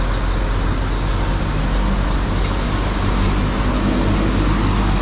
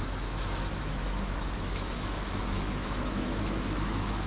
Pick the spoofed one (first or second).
second